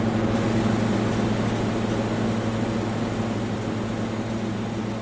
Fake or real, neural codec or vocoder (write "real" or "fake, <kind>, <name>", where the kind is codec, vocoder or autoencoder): real